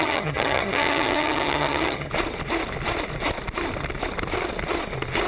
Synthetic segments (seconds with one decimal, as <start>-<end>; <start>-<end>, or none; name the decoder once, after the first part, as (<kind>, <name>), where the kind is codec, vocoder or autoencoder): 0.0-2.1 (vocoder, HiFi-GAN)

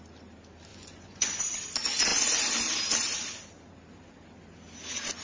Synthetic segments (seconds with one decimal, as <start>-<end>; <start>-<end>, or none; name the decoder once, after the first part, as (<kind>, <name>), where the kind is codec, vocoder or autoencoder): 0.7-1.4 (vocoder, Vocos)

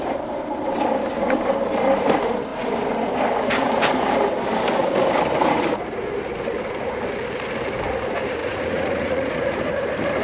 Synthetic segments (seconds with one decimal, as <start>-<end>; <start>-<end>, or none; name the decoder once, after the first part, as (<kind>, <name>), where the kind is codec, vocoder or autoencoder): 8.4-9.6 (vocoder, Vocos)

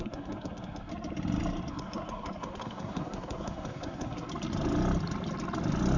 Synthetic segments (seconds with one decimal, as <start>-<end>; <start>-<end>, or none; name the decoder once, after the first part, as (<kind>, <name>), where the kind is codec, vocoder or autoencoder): 0.0-0.9 (codec, SNAC); 1.7-4.3

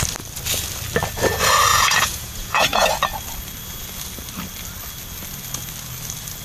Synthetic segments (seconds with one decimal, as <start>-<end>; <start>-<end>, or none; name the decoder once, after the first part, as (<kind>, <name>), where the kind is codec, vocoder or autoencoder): 1.7-2.9 (vocoder, Vocos)

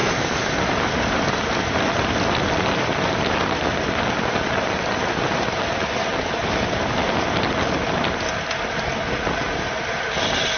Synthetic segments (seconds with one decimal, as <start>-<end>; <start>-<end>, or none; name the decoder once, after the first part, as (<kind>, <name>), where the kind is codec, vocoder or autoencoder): none

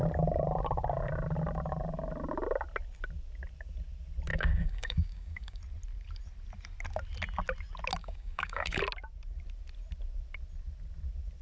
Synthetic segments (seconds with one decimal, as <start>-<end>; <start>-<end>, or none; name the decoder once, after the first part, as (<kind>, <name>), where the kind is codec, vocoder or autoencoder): 4.3-5.6 (codec, DAC); 8.0-8.8